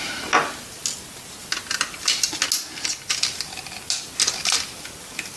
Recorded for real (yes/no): yes